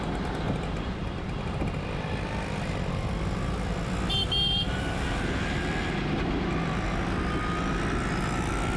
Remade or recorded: recorded